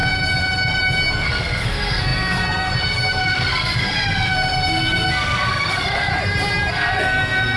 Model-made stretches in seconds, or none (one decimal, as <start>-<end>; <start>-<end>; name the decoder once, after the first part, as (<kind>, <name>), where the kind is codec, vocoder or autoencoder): 1.1-6.1 (codec, SNAC); 6.7-7.6